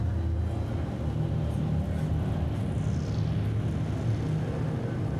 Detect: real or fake real